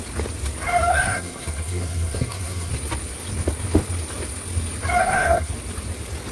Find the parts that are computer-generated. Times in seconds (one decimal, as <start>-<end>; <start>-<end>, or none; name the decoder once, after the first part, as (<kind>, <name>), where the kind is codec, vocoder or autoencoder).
0.9-2.7 (codec, SNAC); 5.0-5.5